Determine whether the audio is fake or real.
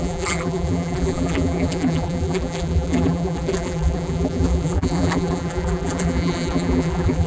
fake